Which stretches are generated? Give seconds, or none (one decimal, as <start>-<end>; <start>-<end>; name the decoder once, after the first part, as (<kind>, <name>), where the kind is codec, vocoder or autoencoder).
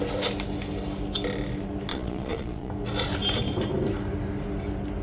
1.9-2.7 (vocoder, Vocos)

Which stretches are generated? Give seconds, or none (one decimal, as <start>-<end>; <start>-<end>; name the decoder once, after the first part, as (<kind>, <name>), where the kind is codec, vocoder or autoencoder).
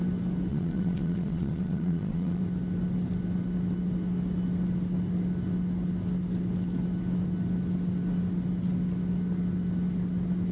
0.5-2.4 (vocoder, Vocos)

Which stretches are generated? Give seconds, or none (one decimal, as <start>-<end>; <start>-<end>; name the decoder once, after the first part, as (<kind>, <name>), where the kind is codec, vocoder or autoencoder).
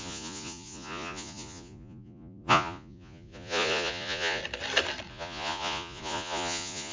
0.0-4.4 (vocoder, Vocos); 5.1-6.9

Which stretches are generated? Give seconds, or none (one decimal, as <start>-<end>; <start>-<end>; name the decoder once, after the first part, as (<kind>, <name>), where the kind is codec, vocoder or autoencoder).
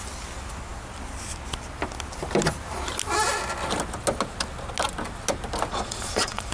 5.7-6.5 (vocoder, Vocos)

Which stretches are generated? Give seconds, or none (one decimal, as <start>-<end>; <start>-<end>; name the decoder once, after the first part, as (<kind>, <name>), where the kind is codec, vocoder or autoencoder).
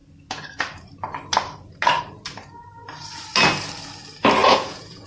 4.4-5.1 (vocoder, Vocos)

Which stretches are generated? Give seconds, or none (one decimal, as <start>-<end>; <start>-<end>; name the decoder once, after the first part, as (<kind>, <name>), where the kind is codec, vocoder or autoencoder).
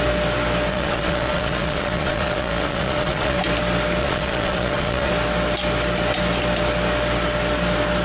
0.7-3.4 (vocoder, Vocos); 4.0-5.1